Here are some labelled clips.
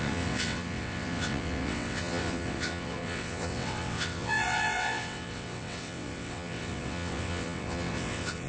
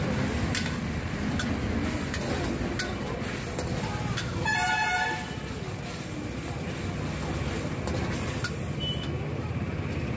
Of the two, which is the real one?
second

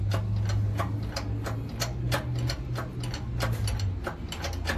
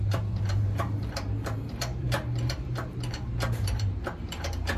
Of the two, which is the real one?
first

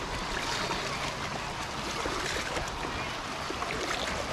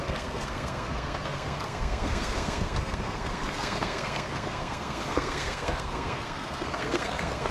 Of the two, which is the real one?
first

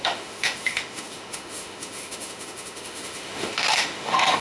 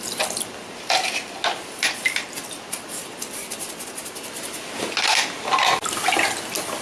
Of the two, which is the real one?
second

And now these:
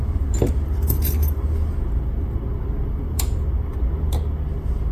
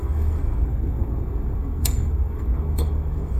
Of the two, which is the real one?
first